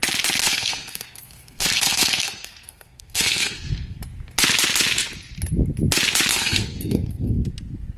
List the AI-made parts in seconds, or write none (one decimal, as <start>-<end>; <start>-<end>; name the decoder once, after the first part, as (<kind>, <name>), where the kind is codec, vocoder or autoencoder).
0.4-4.0 (codec, SNAC); 6.3-7.5